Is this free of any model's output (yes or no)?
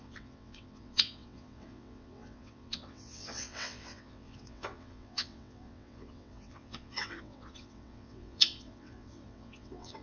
no